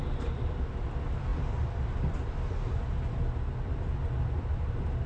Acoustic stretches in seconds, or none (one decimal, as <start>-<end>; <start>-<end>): 0.0-5.1